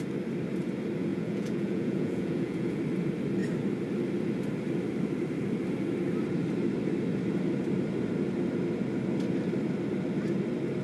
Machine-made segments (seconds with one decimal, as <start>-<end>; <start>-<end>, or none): 1.1-2.8

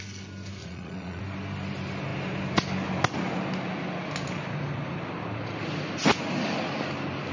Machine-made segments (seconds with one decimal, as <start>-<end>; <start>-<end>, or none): 0.6-1.2